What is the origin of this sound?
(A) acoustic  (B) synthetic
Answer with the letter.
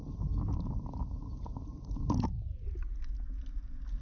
A